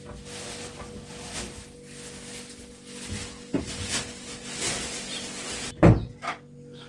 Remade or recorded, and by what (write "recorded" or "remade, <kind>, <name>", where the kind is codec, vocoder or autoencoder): recorded